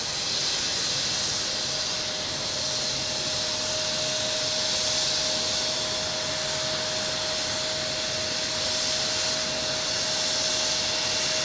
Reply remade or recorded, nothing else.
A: recorded